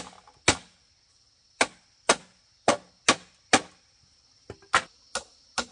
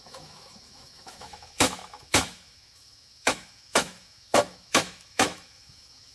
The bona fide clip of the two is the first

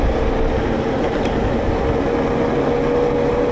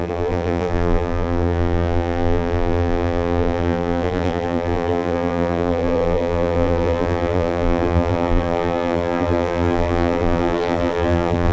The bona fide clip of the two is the first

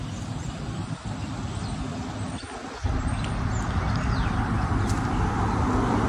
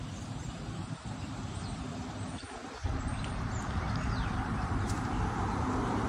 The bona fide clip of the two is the first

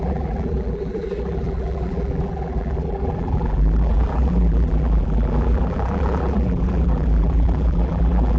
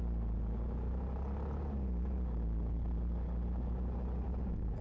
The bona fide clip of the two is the second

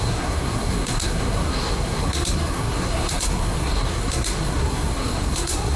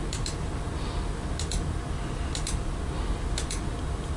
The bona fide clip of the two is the second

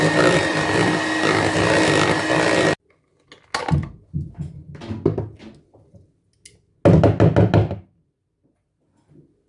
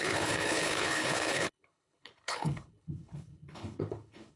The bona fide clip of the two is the first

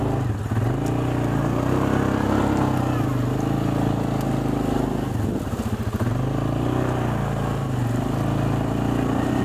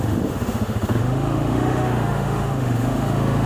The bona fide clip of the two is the first